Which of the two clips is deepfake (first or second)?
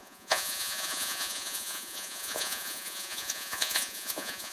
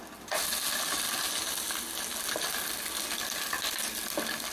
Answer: first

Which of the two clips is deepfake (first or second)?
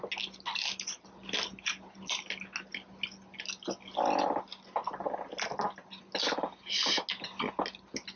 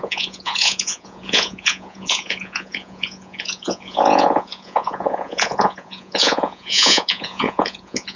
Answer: second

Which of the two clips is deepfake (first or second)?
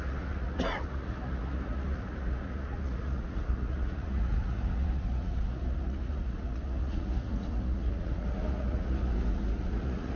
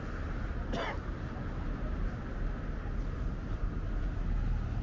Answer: first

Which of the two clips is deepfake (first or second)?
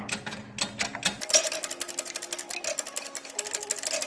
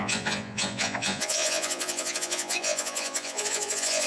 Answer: second